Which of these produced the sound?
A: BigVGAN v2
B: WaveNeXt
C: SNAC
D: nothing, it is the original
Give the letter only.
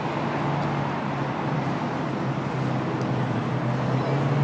D